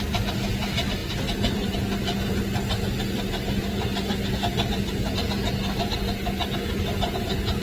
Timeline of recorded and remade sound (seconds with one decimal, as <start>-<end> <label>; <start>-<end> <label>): 0.0-7.6 recorded